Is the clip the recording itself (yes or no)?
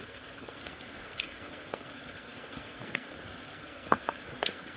no